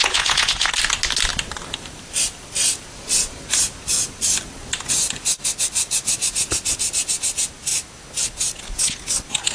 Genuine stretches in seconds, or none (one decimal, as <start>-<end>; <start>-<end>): 0.0-9.5

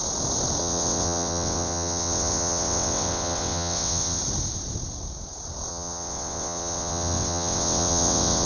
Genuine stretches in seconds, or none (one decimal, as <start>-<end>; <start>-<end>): 0.0-0.6; 4.2-5.7

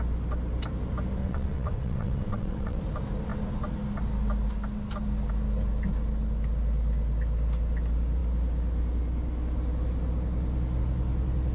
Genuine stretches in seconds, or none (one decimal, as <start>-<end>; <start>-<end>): 0.0-1.2; 2.8-11.5

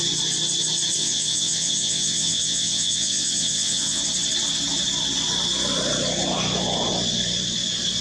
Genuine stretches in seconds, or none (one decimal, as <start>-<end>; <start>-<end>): 0.0-1.0; 4.0-8.0

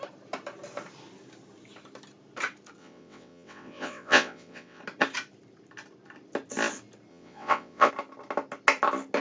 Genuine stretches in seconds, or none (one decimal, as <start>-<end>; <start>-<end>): 0.0-2.8; 4.8-7.1; 7.9-9.2

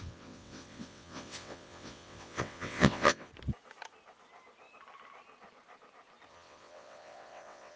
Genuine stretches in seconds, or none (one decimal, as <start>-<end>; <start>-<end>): 3.3-6.3

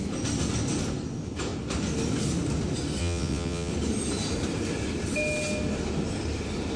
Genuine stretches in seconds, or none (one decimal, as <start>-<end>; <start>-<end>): 0.0-3.0; 3.7-6.8

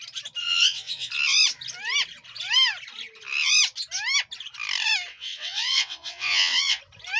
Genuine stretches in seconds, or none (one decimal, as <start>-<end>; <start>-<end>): 0.0-0.4; 1.1-5.1; 6.8-7.2